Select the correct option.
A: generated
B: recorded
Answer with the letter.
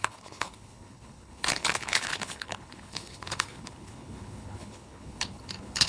A